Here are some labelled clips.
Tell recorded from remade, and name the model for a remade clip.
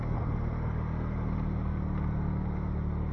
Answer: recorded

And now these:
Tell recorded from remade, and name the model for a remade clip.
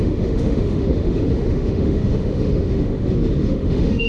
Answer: remade, autoencoder, DAC-VAE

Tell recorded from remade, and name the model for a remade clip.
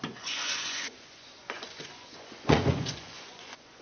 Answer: remade, vocoder, Vocos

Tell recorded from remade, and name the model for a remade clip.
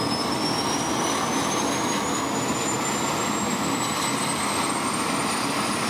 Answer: recorded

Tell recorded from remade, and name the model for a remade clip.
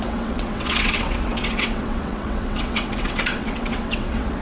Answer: remade, vocoder, WaveNeXt